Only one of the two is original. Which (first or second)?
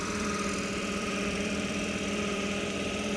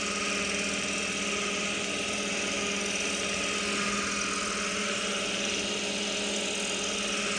second